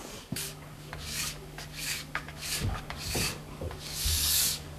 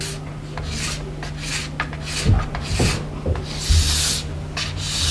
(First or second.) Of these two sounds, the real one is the second